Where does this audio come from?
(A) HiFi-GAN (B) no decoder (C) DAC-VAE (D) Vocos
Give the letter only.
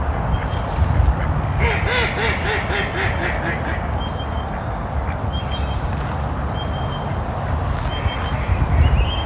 B